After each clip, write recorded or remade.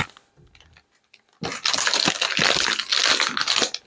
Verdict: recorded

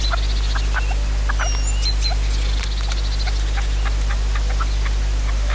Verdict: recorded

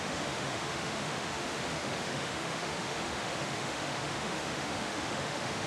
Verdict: remade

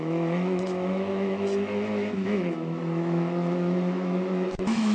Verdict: remade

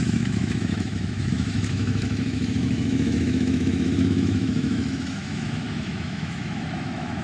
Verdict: remade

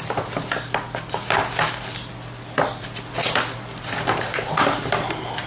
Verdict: recorded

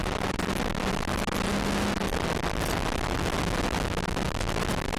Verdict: recorded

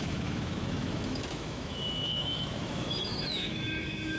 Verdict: remade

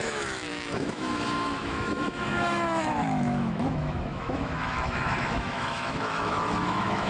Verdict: remade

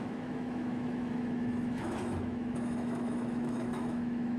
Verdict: remade